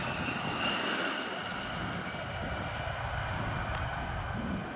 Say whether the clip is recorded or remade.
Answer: recorded